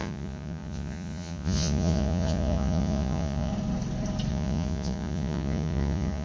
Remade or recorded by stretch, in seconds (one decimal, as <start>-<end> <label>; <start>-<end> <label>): 0.0-3.5 remade; 3.5-4.3 recorded; 4.3-6.2 remade